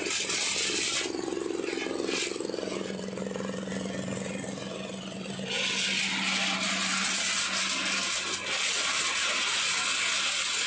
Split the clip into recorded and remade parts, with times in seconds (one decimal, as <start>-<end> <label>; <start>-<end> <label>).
0.0-10.7 recorded